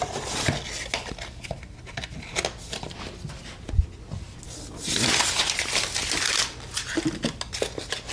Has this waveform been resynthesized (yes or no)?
no